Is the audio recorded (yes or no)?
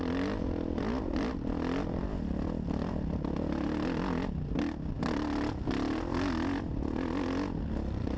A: yes